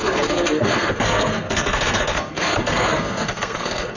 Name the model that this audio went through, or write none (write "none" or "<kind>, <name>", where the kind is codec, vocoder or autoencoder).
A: codec, SNAC